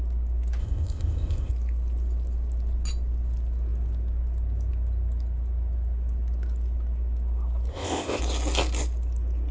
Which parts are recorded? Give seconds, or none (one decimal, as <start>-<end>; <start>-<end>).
0.0-0.6; 1.5-7.7; 8.2-9.5